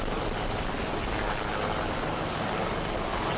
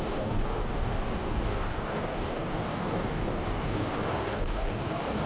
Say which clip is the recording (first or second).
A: first